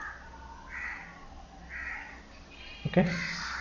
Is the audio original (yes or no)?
yes